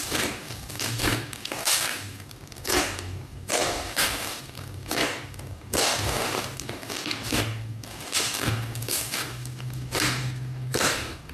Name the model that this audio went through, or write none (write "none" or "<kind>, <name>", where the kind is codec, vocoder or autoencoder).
codec, DAC